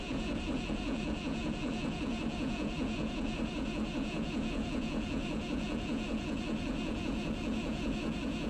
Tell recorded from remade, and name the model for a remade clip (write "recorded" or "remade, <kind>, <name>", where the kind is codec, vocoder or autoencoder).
remade, vocoder, Vocos